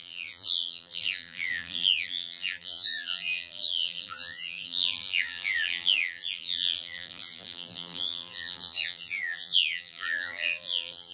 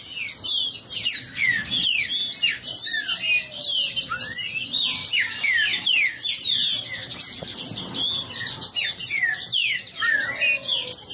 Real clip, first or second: second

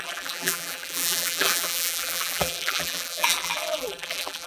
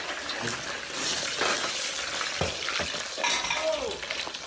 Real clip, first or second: second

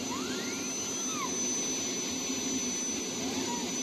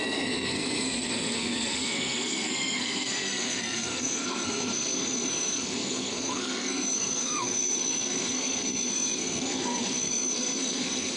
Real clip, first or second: first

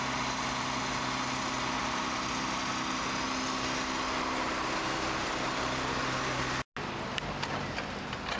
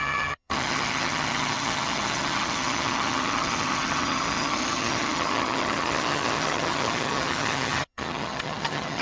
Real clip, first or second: first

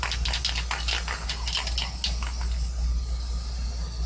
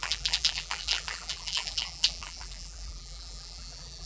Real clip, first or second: first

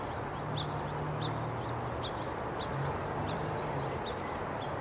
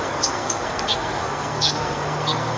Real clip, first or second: first